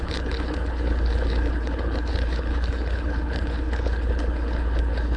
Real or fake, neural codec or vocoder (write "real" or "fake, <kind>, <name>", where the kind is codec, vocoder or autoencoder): fake, codec, HILCodec